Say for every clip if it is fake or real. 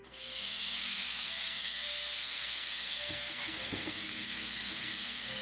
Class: fake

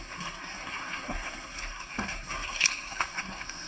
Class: fake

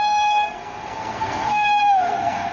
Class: fake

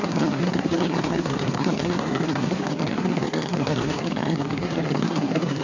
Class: fake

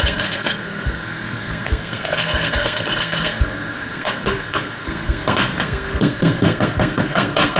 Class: fake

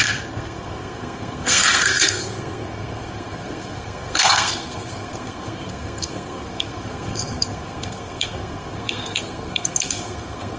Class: fake